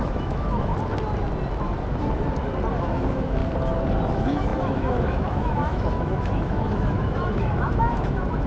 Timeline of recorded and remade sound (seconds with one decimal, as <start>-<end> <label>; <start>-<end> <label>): 0.0-0.7 remade; 0.7-2.8 recorded; 2.8-3.4 remade; 3.4-4.1 recorded; 4.1-8.5 remade